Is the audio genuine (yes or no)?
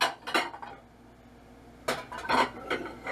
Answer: yes